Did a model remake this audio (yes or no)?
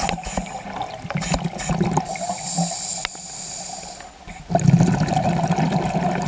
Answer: no